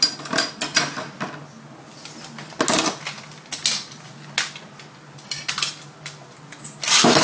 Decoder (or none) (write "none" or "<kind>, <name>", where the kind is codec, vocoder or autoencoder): none